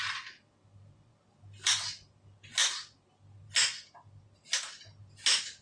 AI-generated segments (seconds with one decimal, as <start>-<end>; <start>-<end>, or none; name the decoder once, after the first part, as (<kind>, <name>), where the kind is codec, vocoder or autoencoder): none